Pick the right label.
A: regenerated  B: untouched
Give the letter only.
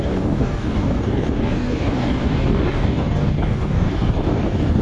A